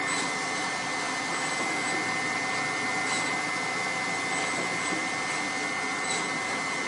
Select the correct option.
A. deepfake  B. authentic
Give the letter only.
B